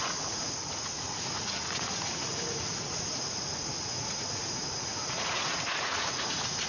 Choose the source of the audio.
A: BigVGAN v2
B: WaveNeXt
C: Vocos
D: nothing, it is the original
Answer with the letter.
C